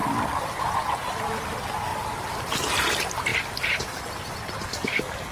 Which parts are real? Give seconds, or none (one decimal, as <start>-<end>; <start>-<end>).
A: 0.0-4.7